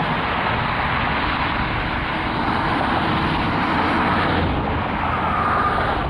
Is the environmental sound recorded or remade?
recorded